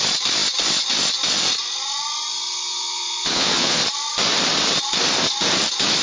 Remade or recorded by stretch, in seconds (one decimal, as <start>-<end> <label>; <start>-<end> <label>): 0.0-2.7 recorded; 2.7-3.8 remade; 3.8-6.0 recorded